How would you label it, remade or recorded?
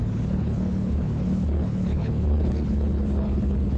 remade